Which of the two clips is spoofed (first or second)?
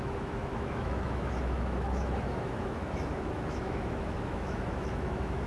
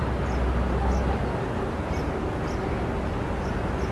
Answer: first